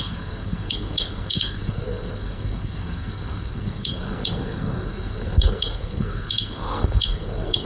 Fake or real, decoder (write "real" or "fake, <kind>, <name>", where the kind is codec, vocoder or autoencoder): fake, codec, SNAC